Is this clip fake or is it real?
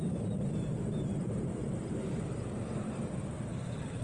fake